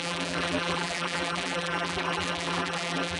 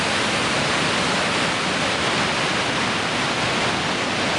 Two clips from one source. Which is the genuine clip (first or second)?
second